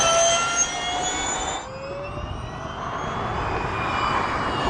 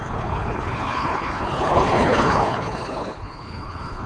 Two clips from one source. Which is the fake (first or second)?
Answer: second